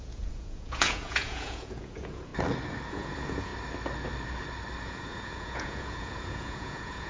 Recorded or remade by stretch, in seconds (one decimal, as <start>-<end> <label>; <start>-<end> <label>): 0.0-2.3 remade; 2.3-2.9 recorded; 2.9-3.5 remade; 3.5-4.8 recorded; 4.8-7.1 remade